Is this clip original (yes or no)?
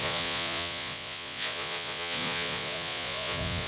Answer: no